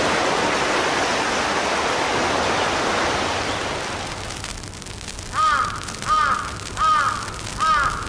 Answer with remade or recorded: recorded